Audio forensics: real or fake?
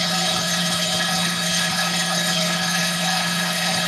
fake